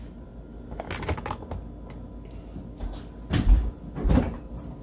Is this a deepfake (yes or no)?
no